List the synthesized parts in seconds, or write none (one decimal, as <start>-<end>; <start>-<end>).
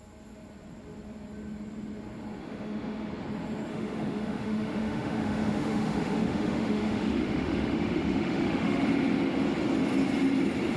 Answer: 2.4-3.1; 3.7-8.8